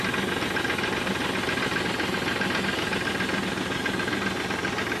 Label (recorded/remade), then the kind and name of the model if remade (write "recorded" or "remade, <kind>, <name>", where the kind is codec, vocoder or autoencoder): recorded